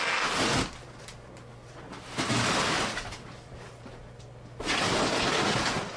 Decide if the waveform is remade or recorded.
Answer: recorded